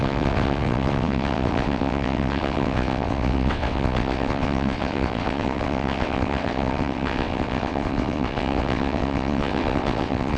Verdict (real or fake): fake